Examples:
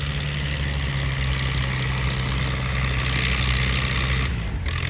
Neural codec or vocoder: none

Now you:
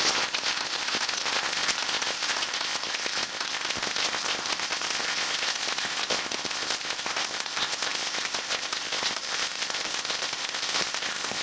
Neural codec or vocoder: codec, ZipCodec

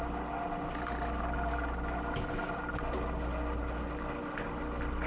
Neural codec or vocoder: none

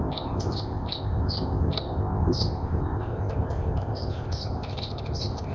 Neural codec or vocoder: codec, ZipCodec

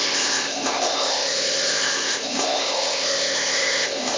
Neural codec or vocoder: codec, ZipCodec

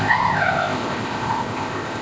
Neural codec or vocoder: codec, ZipCodec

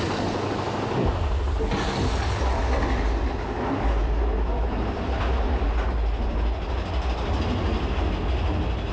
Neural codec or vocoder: none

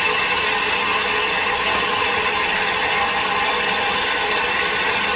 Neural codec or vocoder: none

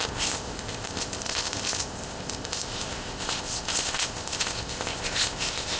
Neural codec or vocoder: codec, ZipCodec